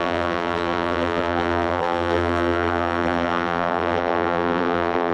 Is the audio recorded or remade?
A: remade